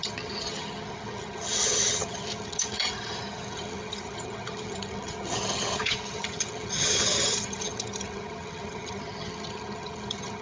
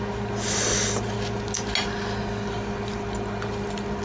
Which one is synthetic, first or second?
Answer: first